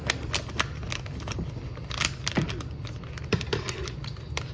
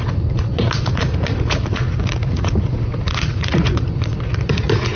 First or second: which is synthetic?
second